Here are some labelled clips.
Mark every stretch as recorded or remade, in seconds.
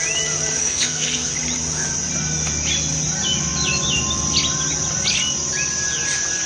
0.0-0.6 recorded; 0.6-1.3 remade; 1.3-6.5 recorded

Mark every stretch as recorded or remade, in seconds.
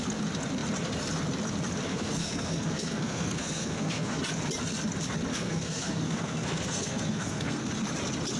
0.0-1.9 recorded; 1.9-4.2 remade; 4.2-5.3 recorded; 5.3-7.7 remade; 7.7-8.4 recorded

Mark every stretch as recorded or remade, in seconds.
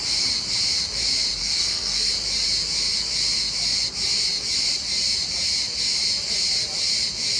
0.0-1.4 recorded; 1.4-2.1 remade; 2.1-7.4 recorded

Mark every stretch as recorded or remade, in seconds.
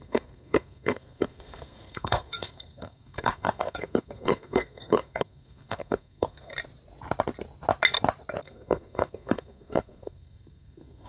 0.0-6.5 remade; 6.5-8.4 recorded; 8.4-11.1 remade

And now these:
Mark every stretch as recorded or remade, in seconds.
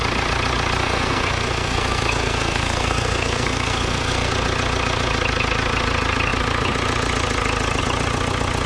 0.0-0.8 recorded; 0.8-4.3 remade; 4.3-8.7 recorded